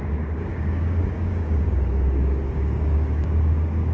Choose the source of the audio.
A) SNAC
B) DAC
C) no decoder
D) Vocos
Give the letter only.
B